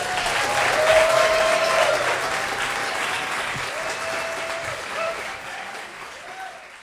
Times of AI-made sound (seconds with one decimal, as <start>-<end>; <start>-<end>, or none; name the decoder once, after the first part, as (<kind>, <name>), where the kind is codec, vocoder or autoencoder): 0.9-1.7 (codec, DAC); 2.8-3.8; 4.6-6.2